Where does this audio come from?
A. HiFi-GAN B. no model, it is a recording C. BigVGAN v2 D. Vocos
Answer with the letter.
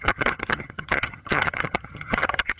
A